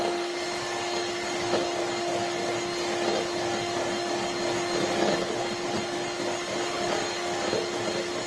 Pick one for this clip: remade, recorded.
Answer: recorded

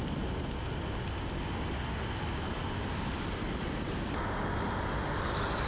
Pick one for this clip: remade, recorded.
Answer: recorded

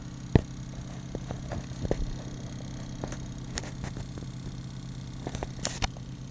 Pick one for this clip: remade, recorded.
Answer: recorded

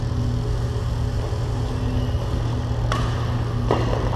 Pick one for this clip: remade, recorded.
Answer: recorded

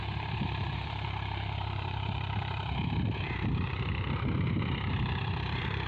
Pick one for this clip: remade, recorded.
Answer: remade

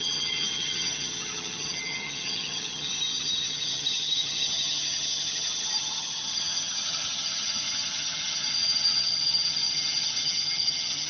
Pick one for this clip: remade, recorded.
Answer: remade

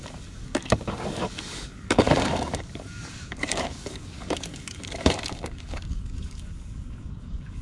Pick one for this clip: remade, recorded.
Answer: remade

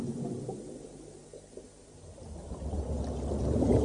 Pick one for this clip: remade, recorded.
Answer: recorded